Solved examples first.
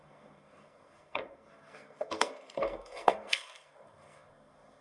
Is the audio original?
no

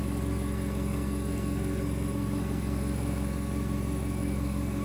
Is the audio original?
no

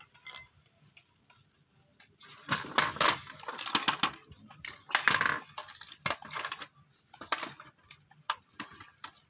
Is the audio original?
yes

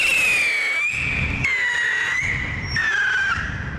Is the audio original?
yes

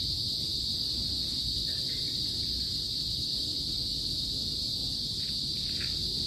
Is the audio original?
yes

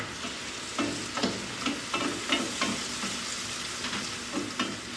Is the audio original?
yes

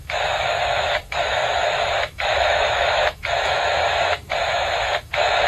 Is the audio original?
no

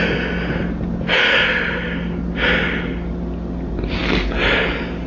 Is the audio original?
yes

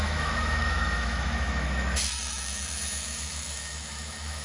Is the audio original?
no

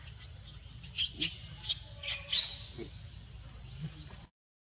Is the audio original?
yes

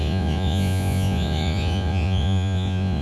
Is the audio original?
no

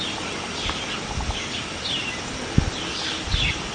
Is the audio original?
yes